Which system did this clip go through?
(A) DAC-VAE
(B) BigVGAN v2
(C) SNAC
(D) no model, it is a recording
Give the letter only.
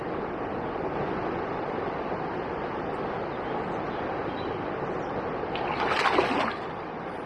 D